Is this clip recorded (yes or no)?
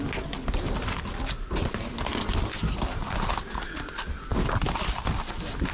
yes